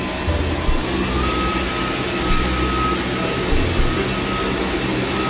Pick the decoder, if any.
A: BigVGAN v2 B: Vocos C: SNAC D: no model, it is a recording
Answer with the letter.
D